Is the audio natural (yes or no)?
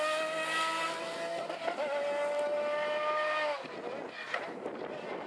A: yes